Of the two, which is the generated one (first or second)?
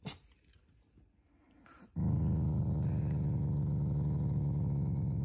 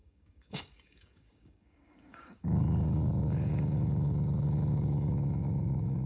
second